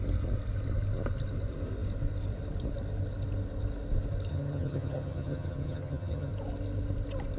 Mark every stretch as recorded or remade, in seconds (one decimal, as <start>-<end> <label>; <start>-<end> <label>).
0.0-4.3 recorded; 4.3-6.3 remade; 6.3-7.4 recorded